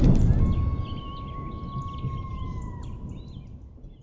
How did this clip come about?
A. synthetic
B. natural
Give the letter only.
B